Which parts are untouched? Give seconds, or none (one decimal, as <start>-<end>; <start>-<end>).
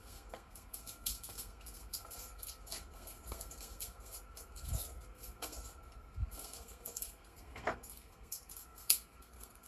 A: none